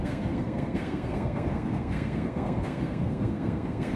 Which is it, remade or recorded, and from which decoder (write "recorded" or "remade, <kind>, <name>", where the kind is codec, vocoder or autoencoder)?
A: remade, codec, SNAC